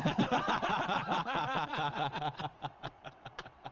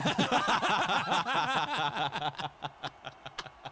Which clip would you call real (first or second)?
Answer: second